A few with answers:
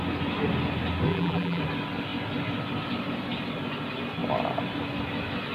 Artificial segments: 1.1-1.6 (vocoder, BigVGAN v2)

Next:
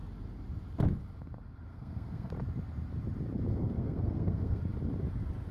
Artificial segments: 1.7-2.3 (codec, SNAC); 3.5-4.6

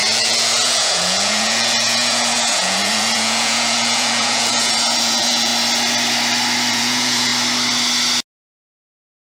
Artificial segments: 0.0-5.5 (vocoder, Vocos); 6.7-7.3

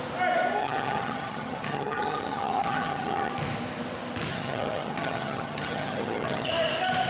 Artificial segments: 0.6-3.3 (vocoder, HiFi-GAN); 4.3-6.5

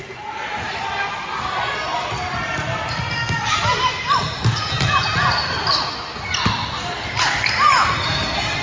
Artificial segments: none